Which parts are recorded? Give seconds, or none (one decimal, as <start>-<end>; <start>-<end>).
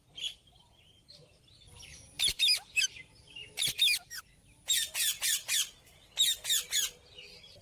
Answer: 0.0-7.6